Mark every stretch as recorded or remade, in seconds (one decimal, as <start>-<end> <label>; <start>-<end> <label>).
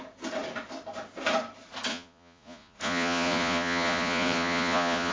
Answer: 0.0-1.9 recorded; 1.9-5.1 remade